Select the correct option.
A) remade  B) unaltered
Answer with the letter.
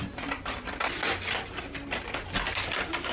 B